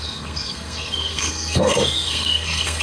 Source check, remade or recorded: remade